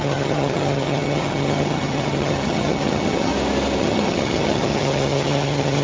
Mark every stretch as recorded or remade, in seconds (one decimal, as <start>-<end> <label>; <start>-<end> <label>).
0.0-3.3 remade; 3.3-3.8 recorded; 3.8-5.8 remade